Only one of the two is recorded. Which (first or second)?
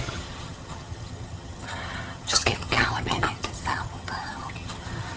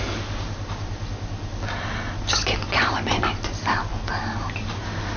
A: second